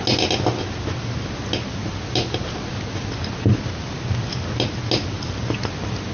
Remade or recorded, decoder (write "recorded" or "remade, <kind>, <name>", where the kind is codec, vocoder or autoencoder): recorded